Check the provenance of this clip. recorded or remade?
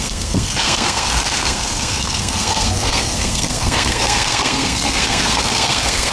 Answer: remade